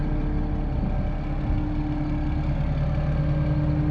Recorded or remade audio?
recorded